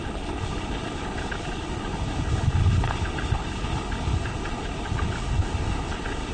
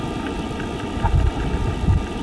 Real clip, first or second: second